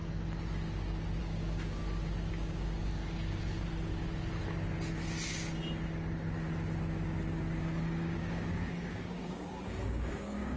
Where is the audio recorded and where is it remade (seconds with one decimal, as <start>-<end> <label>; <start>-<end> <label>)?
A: 0.0-1.2 recorded; 1.2-1.8 remade; 1.8-2.3 recorded; 2.3-3.0 remade; 3.0-7.6 recorded; 7.6-10.6 remade